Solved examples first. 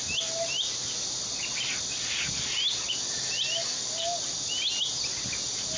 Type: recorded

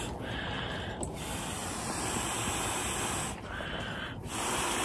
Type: recorded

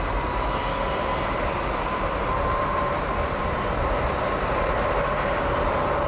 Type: remade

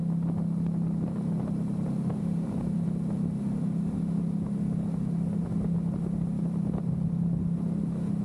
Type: recorded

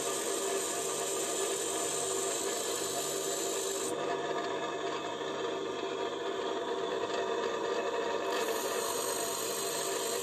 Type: recorded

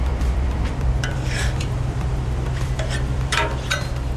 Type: remade